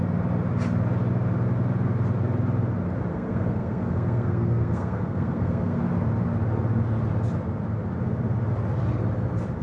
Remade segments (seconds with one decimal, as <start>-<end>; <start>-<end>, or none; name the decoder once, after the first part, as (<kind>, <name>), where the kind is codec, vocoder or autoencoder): 3.1-5.8 (codec, SNAC)